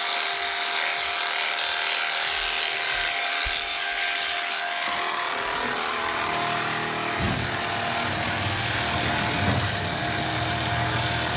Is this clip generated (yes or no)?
no